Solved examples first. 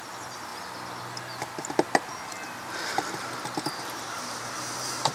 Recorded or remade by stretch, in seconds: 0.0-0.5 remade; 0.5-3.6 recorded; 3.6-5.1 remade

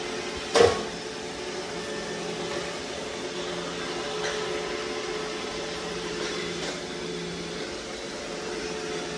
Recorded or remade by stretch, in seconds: 0.0-5.5 recorded; 5.5-8.6 remade; 8.6-9.2 recorded

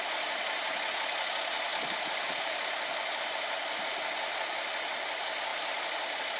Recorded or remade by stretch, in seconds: 0.0-1.7 recorded; 1.7-3.8 remade; 3.8-6.4 recorded

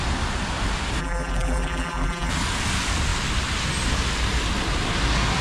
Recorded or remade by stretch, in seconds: 0.0-1.0 recorded; 1.0-2.3 remade; 2.3-5.4 recorded

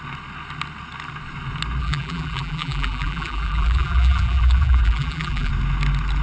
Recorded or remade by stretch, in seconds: 0.0-1.8 recorded; 1.8-5.5 remade; 5.5-6.2 recorded

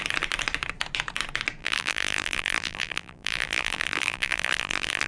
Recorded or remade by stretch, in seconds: 0.0-1.6 recorded; 1.6-5.1 remade